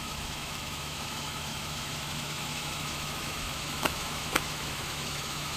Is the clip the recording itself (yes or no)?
no